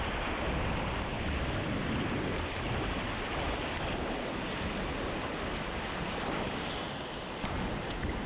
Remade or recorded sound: recorded